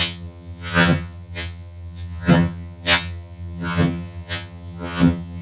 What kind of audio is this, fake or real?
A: fake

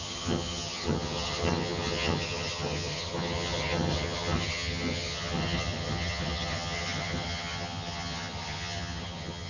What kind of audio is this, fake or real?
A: fake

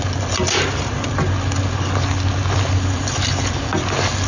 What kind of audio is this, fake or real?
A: real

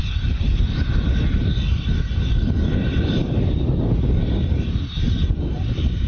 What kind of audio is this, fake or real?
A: real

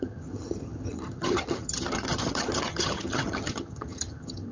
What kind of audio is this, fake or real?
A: fake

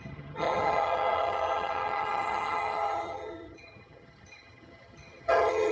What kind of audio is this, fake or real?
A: fake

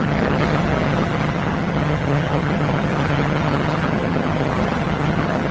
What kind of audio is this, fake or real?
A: fake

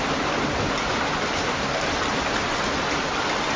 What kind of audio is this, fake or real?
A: real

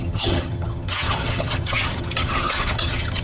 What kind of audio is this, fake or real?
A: fake